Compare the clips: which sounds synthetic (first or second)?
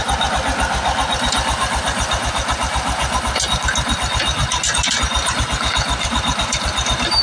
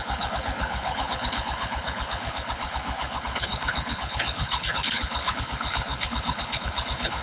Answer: second